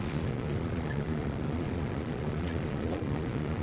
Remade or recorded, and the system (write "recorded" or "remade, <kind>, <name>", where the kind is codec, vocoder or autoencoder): remade, vocoder, Vocos